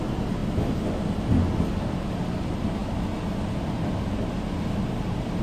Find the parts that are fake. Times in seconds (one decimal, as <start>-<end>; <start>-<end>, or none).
0.0-0.4; 1.8-2.8; 3.7-5.4